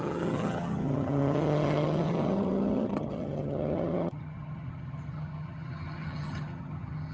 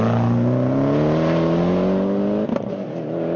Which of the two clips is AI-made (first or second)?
first